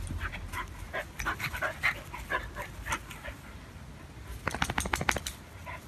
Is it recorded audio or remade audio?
recorded